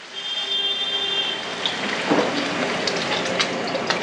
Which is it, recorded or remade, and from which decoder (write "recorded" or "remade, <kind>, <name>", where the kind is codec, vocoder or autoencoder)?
recorded